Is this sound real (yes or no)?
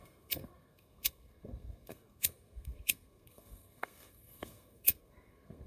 no